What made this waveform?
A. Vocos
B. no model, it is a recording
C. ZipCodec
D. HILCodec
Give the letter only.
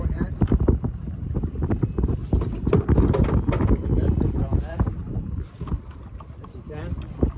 B